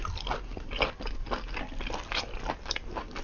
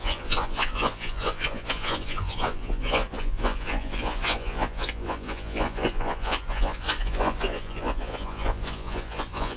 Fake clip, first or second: second